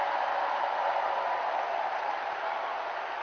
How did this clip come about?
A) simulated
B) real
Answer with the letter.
A